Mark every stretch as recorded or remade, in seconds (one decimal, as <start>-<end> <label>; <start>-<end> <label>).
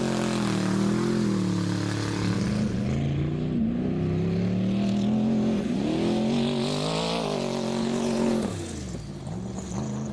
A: 0.0-7.8 recorded; 7.8-8.3 remade; 8.3-10.1 recorded